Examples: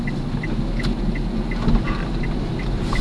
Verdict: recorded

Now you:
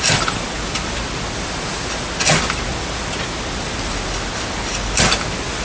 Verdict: recorded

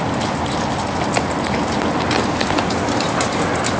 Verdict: recorded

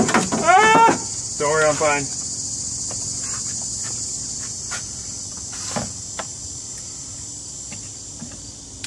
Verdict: recorded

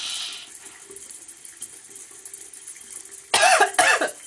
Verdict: recorded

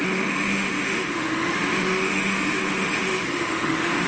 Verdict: remade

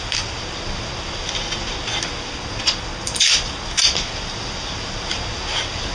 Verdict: recorded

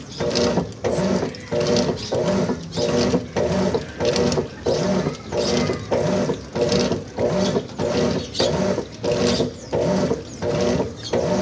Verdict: recorded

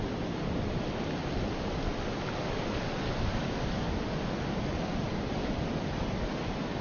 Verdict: recorded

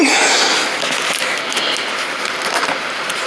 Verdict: recorded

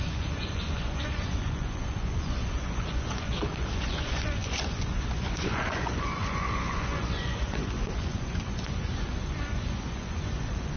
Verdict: remade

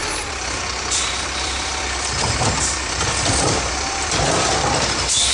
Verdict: remade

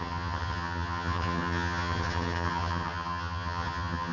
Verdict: remade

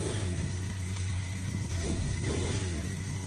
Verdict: remade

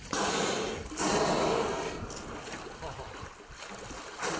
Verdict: recorded